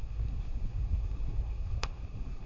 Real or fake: fake